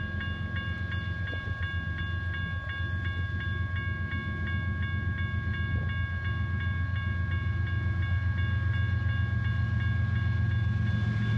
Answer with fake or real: real